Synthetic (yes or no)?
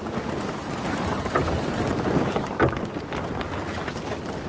no